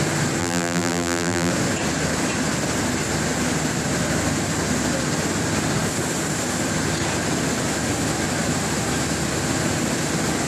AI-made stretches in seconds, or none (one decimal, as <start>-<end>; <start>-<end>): 0.4-1.5